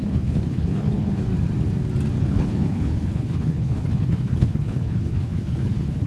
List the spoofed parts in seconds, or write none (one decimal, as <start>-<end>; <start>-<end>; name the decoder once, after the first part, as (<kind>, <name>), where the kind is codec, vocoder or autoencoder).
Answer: 0.0-1.3 (codec, HILCodec); 2.2-6.1